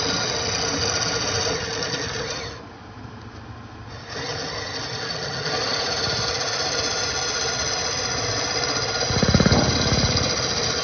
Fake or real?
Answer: real